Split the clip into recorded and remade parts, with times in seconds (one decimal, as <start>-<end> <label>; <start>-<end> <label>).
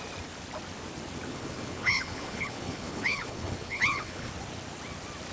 0.0-1.3 recorded; 1.3-4.3 remade; 4.3-5.3 recorded